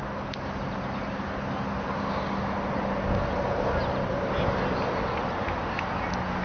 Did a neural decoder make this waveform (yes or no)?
yes